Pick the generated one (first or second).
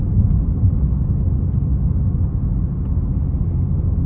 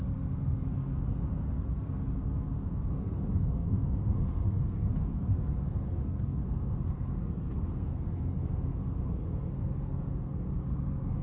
second